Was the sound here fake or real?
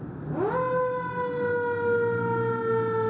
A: real